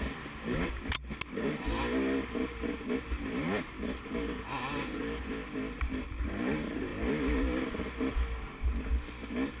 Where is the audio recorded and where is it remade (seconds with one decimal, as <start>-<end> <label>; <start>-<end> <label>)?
0.0-9.6 recorded